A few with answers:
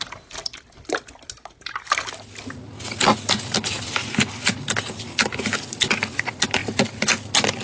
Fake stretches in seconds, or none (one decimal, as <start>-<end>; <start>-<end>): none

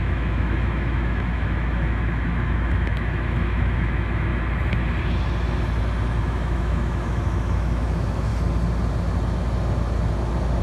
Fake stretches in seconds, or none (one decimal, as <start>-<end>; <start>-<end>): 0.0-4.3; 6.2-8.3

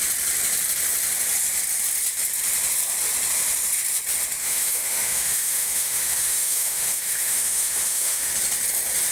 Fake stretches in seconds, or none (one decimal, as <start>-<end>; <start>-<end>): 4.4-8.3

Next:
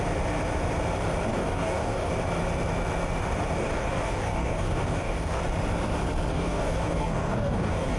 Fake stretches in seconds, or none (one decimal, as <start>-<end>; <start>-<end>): 1.3-2.1; 3.6-5.4; 6.3-8.0

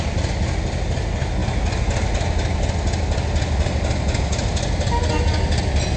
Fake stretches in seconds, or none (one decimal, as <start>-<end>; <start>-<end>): none

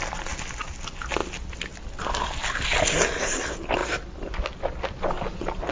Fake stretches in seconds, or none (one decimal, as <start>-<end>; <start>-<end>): 3.8-4.7